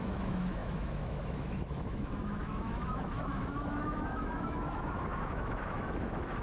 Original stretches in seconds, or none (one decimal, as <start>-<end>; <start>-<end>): none